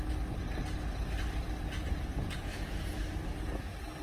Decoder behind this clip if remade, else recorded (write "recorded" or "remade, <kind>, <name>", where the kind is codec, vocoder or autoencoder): recorded